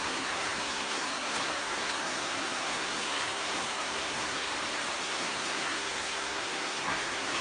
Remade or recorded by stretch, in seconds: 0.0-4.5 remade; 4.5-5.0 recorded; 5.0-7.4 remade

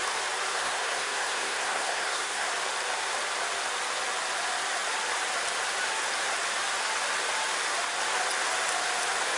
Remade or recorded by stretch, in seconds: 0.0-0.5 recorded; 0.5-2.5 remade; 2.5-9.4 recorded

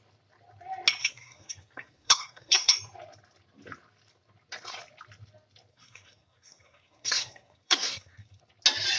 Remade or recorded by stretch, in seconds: 0.0-1.0 recorded; 1.0-2.7 remade; 2.7-5.7 recorded; 5.7-8.4 remade; 8.4-9.0 recorded

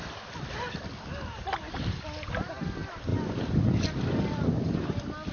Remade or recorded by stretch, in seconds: 0.0-5.3 recorded

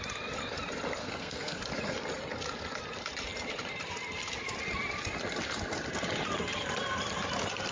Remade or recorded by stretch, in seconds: 0.0-1.0 recorded; 1.0-1.6 remade; 1.6-7.7 recorded

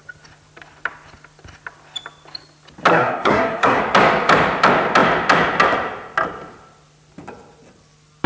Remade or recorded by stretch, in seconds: 0.0-2.9 recorded; 2.9-3.8 remade; 3.8-8.3 recorded

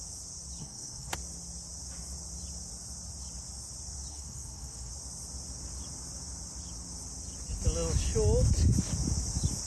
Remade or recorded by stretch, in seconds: 0.0-0.6 recorded; 0.6-1.1 remade; 1.1-4.1 recorded; 4.1-4.9 remade; 4.9-9.7 recorded